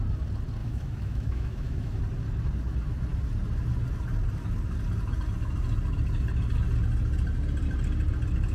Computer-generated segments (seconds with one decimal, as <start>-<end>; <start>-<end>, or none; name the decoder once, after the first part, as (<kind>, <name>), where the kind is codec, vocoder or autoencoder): 0.6-2.0 (autoencoder, DAC-VAE)